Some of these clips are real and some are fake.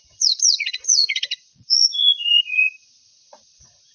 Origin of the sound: fake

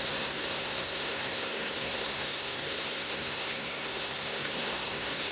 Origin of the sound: fake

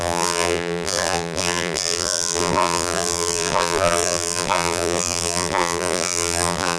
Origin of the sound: fake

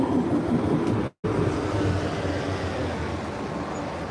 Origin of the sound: real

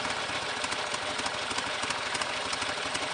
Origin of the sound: real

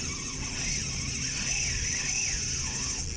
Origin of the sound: real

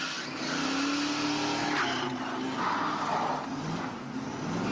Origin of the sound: real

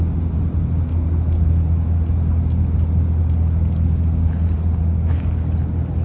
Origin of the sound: real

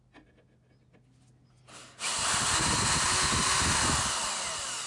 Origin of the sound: real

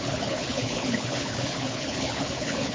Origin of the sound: fake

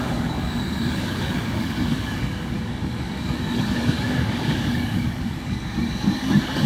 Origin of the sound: fake